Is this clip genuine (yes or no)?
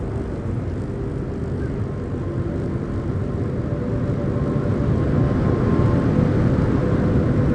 yes